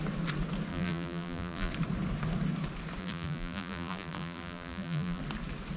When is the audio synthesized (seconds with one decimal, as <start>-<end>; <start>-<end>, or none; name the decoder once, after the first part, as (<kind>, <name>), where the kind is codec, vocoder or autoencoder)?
0.7-1.7 (vocoder, BigVGAN v2); 3.0-5.2